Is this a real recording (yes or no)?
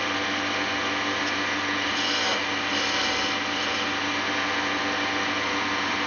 yes